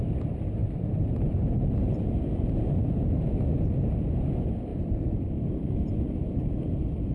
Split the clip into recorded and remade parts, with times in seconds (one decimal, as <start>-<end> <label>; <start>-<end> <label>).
0.0-4.7 recorded; 4.7-5.3 remade; 5.3-7.1 recorded